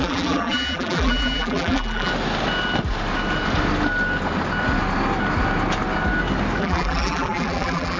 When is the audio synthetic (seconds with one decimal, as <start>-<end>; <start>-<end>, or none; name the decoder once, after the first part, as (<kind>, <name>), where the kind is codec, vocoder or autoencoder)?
0.0-2.1 (vocoder, BigVGAN v2); 6.6-8.0